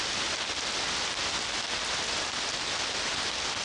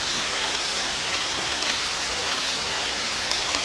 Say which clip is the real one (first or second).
first